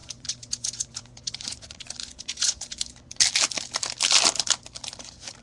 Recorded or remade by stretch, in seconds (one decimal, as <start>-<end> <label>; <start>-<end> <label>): 0.0-3.2 remade; 3.2-5.4 recorded